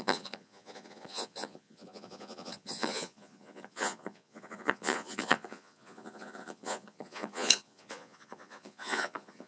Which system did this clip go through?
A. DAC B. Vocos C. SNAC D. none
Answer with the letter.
B